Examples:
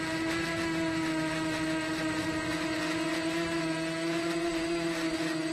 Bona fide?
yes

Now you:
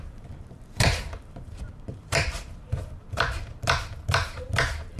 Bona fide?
no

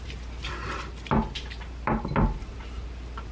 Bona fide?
yes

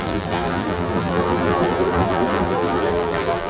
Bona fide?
no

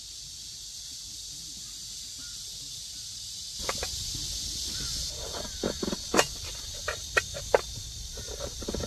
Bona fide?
yes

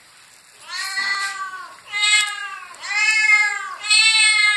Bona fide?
no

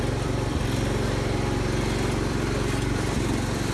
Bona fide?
no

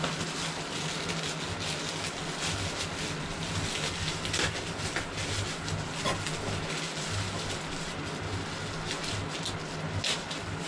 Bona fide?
yes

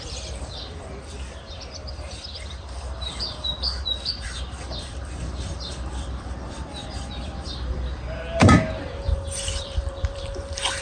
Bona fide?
no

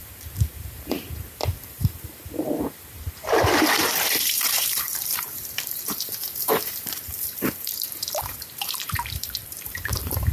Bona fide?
no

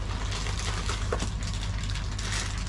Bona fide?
yes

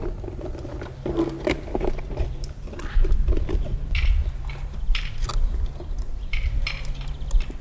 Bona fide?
yes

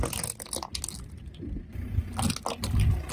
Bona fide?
yes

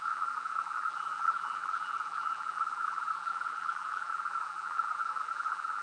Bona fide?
no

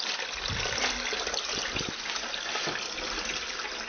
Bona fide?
yes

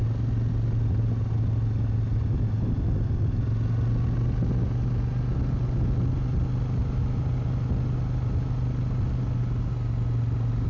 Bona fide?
yes